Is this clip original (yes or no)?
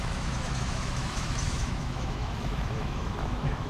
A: no